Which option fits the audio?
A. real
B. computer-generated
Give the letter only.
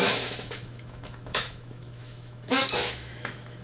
B